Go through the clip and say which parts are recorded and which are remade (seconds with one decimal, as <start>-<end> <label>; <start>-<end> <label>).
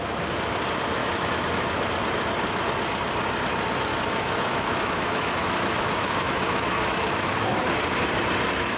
0.0-1.0 recorded; 1.0-1.5 remade; 1.5-3.9 recorded; 3.9-7.8 remade; 7.8-8.8 recorded